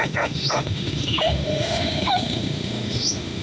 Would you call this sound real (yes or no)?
no